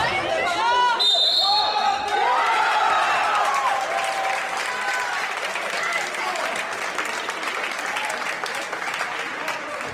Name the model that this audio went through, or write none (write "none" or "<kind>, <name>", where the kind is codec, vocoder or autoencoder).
none